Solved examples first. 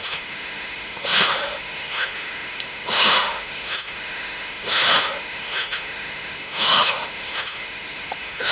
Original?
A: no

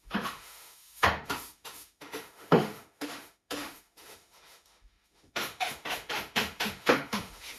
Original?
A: no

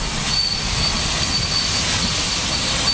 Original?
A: yes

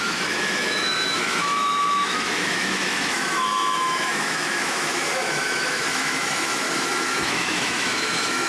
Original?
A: no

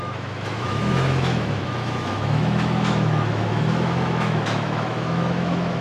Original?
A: no